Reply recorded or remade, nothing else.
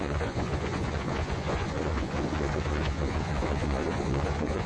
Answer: remade